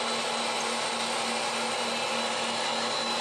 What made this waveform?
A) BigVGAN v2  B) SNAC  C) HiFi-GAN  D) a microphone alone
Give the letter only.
D